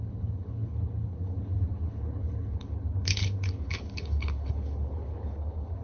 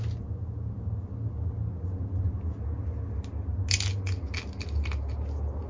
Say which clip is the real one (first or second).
second